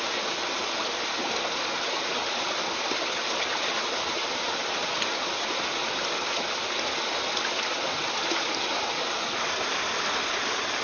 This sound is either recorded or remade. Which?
recorded